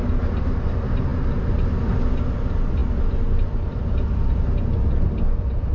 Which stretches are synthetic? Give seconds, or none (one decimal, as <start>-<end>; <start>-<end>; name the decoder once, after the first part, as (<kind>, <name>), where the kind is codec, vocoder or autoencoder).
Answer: none